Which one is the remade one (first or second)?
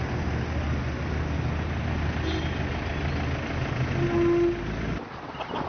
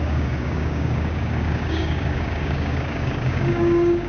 second